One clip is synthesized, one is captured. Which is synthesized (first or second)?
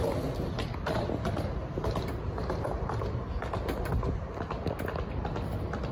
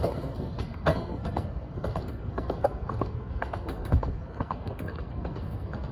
second